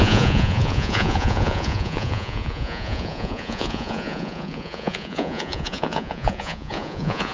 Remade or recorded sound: remade